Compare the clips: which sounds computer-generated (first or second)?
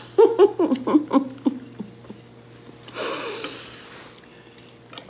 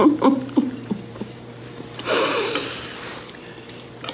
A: second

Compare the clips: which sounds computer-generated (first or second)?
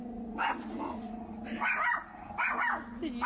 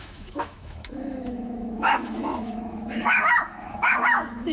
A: second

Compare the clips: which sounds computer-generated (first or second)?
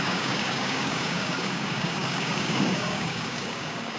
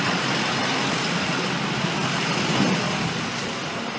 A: first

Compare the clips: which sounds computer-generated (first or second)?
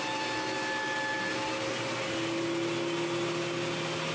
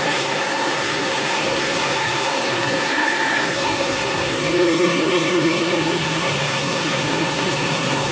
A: second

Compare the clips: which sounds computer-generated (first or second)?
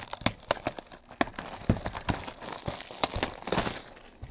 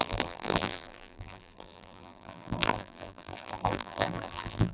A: second